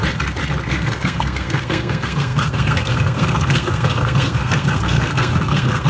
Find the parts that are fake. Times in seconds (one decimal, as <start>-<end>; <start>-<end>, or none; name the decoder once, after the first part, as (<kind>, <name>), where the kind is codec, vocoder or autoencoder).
0.7-5.9 (codec, SNAC)